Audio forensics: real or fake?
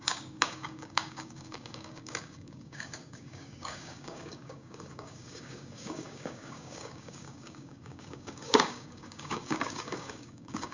fake